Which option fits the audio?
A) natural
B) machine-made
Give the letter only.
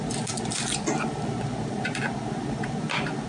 A